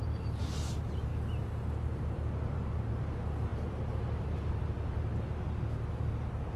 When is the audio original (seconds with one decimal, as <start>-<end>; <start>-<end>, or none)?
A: 0.0-6.6